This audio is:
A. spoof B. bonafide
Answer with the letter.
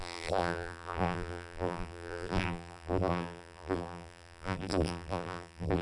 A